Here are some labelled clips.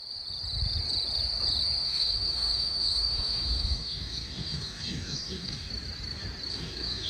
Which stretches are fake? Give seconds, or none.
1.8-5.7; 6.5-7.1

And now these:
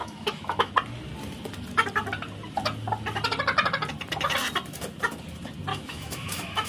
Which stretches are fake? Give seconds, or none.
0.0-0.7; 5.7-6.7